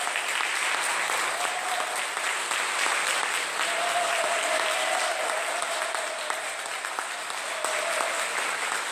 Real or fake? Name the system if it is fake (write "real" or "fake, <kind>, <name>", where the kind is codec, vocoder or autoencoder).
real